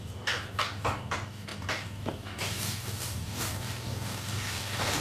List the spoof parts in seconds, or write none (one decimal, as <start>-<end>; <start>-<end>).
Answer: 0.0-5.0